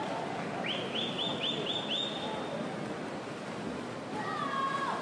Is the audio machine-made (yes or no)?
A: no